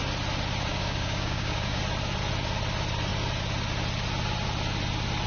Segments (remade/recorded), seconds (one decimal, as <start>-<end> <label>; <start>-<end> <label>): 0.0-0.7 recorded; 0.7-1.8 remade; 1.8-5.3 recorded